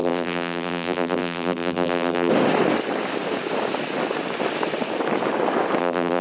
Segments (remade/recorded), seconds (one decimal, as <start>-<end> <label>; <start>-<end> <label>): 0.0-2.3 remade; 2.3-5.8 recorded; 5.8-6.2 remade